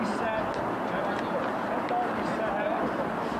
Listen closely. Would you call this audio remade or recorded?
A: recorded